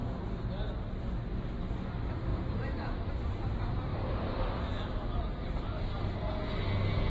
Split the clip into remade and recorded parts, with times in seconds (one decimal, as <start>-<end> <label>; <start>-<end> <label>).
0.0-2.3 recorded; 2.3-3.1 remade; 3.1-3.9 recorded; 3.9-5.8 remade; 5.8-7.1 recorded